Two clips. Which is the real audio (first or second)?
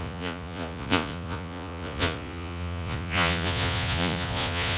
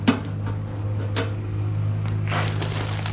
second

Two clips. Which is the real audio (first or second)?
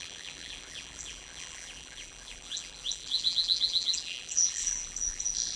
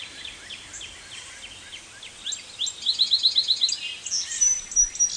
second